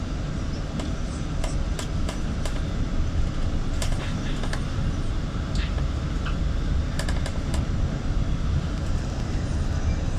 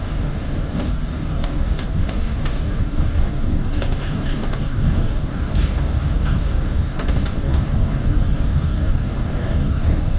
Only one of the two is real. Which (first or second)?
first